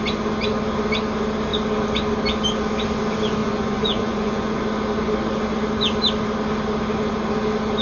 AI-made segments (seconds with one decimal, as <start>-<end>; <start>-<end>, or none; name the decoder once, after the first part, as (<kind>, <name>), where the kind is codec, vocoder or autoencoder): 3.4-4.6 (vocoder, Vocos)